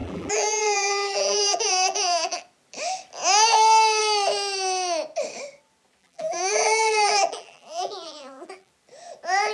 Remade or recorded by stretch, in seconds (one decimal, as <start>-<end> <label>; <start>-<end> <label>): 0.0-2.4 remade; 2.4-6.0 recorded; 6.0-8.7 remade; 8.7-9.5 recorded